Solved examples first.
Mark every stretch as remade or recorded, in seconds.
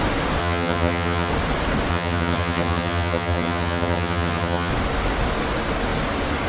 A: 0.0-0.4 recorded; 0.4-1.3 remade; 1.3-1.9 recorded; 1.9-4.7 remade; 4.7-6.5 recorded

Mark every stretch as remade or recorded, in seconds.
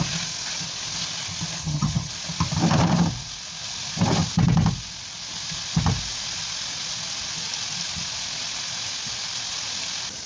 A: 0.0-1.6 recorded; 1.6-2.1 remade; 2.1-10.3 recorded